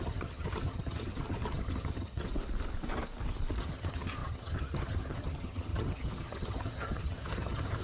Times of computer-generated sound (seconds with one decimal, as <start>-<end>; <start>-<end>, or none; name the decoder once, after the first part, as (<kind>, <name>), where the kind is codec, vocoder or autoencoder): 0.0-2.3 (vocoder, HiFi-GAN); 3.6-7.8